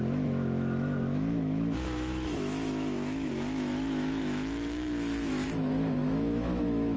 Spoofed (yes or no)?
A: yes